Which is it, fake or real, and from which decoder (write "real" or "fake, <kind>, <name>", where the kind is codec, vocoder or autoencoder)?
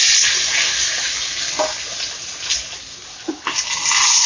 real